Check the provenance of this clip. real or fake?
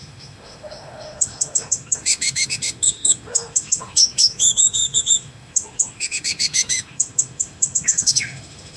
fake